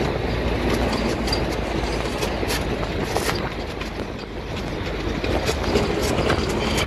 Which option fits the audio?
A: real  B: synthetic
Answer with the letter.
A